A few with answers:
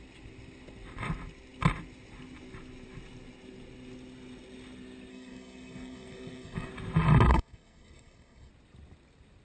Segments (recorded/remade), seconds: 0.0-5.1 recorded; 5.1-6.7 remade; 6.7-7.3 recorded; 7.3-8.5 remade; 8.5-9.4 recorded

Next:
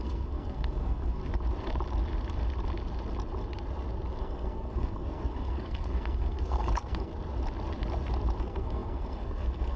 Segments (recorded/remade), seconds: 0.0-1.2 remade; 1.2-4.2 recorded; 4.2-7.1 remade; 7.1-8.4 recorded; 8.4-9.8 remade

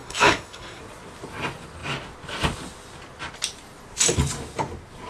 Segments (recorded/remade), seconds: 0.0-0.8 remade; 0.8-5.1 recorded

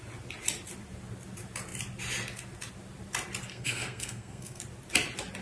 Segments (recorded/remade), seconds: 0.0-3.5 recorded; 3.5-4.6 remade; 4.6-5.4 recorded

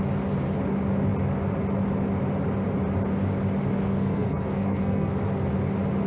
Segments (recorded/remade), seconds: 0.0-3.7 recorded; 3.7-5.1 remade; 5.1-6.1 recorded

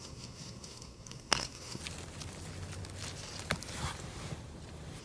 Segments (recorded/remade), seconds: 0.0-1.8 remade; 1.8-5.0 recorded